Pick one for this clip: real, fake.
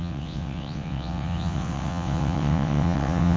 fake